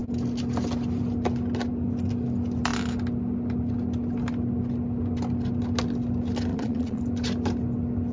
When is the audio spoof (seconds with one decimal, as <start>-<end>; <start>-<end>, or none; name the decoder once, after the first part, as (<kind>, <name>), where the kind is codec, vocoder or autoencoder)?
6.5-7.0 (vocoder, Vocos)